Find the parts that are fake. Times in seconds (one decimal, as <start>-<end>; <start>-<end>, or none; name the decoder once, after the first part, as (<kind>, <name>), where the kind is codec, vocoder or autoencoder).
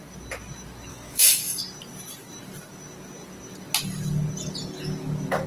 0.9-1.6 (autoencoder, DAC-VAE)